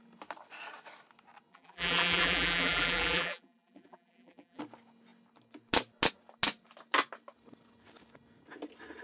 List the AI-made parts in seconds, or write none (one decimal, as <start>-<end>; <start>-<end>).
1.5-4.6